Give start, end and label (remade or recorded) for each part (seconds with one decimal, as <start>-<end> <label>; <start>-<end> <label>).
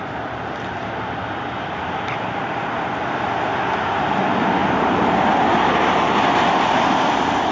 0.0-4.6 recorded; 4.6-5.2 remade; 5.2-7.5 recorded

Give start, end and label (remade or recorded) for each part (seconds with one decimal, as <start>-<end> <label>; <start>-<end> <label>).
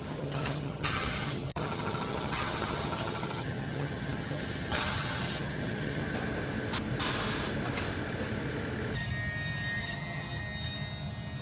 0.0-6.0 remade; 6.0-9.8 recorded; 9.8-10.4 remade; 10.4-11.4 recorded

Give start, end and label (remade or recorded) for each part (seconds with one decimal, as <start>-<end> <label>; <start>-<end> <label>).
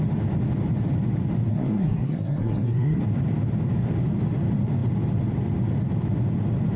0.0-1.5 recorded; 1.5-3.0 remade; 3.0-6.8 recorded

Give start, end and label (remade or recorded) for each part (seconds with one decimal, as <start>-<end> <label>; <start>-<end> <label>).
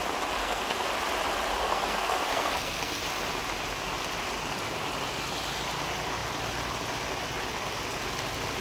0.0-0.4 recorded; 0.4-0.9 remade; 0.9-1.6 recorded; 1.6-3.0 remade; 3.0-8.6 recorded